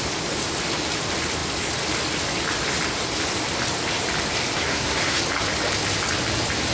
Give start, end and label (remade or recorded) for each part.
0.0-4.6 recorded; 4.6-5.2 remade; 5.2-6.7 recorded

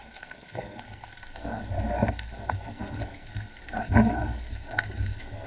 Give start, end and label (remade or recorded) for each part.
0.0-5.5 remade